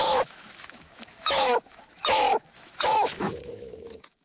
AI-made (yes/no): yes